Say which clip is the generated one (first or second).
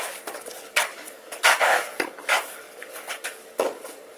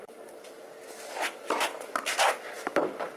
first